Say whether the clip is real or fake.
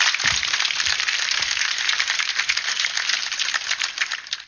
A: real